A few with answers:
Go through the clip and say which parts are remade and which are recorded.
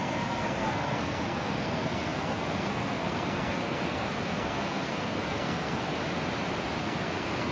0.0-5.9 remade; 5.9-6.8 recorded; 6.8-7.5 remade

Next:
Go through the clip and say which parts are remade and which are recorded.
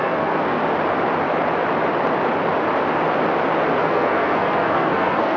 0.0-0.6 remade; 0.6-3.8 recorded; 3.8-5.4 remade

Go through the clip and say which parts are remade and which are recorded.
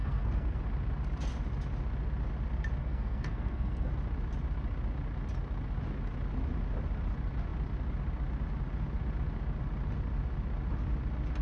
0.0-0.6 remade; 0.6-2.8 recorded; 2.8-3.9 remade; 3.9-11.4 recorded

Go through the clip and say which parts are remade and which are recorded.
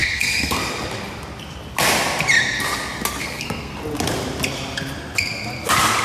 0.0-0.6 remade; 0.6-3.2 recorded; 3.2-3.7 remade; 3.7-6.0 recorded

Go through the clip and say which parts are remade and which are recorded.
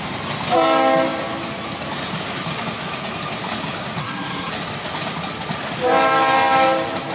0.0-4.0 recorded; 4.0-4.5 remade; 4.5-7.1 recorded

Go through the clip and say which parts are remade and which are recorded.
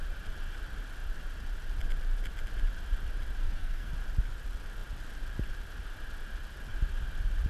0.0-3.4 recorded; 3.4-3.9 remade; 3.9-7.5 recorded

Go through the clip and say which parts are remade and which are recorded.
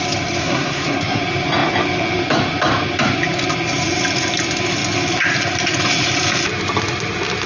0.0-0.4 recorded; 0.4-1.2 remade; 1.2-7.5 recorded